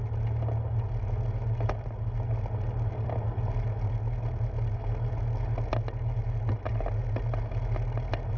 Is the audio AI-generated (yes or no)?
no